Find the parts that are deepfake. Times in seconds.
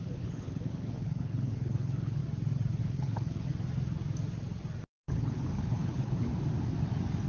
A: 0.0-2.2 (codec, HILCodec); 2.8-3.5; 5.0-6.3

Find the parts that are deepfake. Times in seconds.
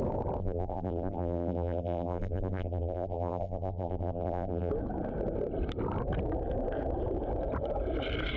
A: 0.4-4.7 (vocoder, BigVGAN v2)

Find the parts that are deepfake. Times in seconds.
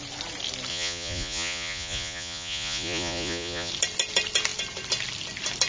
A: 0.7-3.7 (vocoder, Vocos)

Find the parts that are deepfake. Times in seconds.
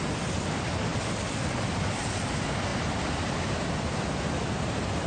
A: 2.7-4.1 (vocoder, BigVGAN v2)